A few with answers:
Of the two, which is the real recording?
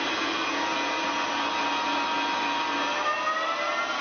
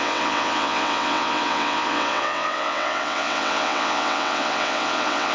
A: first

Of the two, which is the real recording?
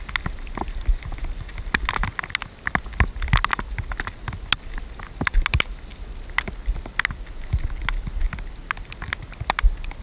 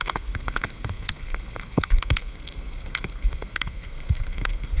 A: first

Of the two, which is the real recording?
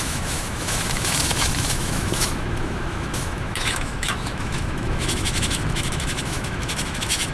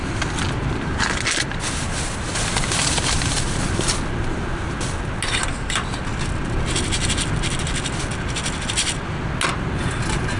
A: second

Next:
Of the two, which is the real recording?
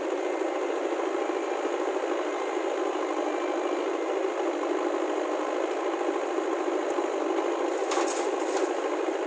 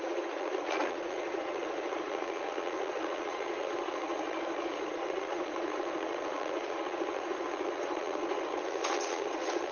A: first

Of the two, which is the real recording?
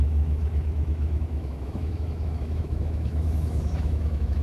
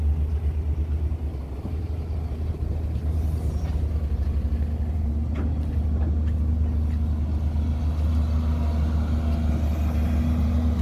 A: second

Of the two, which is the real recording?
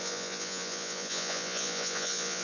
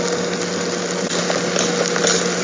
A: second